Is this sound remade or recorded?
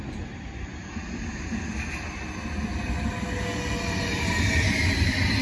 recorded